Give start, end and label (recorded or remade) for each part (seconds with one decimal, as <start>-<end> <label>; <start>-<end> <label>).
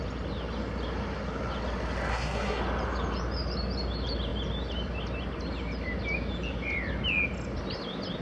0.0-2.1 recorded; 2.1-2.6 remade; 2.6-8.2 recorded